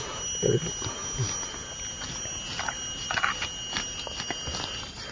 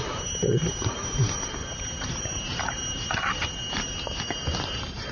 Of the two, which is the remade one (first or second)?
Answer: second